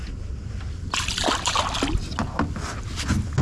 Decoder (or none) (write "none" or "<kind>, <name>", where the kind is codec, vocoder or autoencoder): none